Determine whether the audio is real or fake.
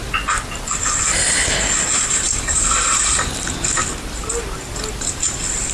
real